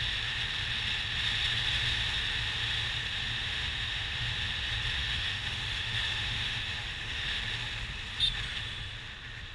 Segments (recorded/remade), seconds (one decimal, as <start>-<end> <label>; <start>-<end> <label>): 0.0-3.4 recorded; 3.4-4.3 remade; 4.3-5.0 recorded; 5.0-7.4 remade; 7.4-9.5 recorded